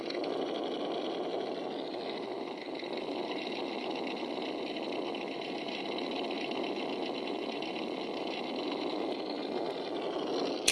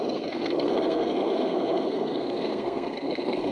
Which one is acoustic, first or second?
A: first